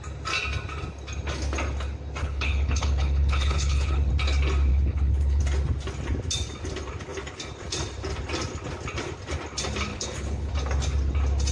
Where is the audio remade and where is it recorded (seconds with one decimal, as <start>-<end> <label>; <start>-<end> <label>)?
0.0-2.2 recorded; 2.2-4.1 remade; 4.1-4.7 recorded; 4.7-5.4 remade; 5.4-9.9 recorded; 9.9-10.5 remade; 10.5-11.5 recorded